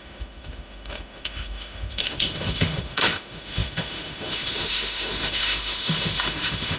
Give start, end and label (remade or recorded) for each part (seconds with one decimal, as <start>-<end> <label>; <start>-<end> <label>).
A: 0.0-6.8 remade